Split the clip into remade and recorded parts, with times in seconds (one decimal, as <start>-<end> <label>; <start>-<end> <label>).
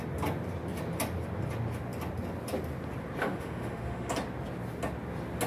0.0-3.2 recorded; 3.2-4.1 remade; 4.1-5.5 recorded